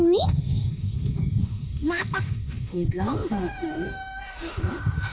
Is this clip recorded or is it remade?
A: remade